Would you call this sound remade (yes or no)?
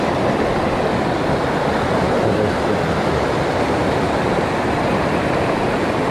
no